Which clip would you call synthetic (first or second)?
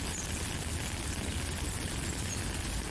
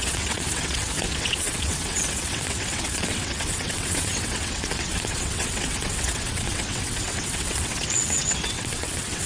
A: second